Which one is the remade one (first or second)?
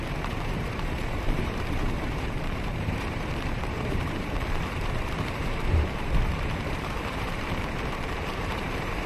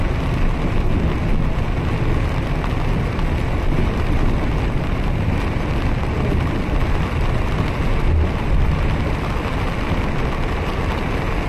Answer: first